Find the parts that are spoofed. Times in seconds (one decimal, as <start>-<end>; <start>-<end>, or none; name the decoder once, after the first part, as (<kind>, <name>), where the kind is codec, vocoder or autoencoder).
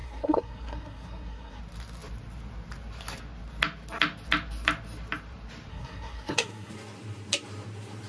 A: 0.0-1.6 (codec, SNAC); 5.7-6.7